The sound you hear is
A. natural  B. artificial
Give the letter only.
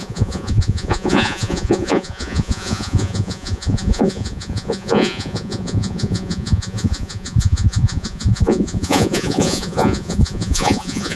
B